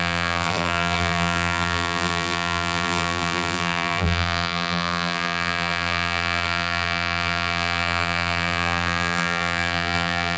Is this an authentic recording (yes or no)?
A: no